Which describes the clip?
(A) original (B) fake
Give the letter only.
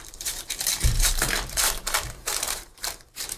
B